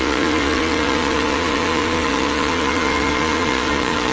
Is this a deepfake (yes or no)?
yes